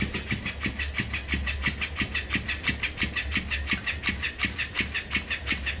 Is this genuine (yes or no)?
yes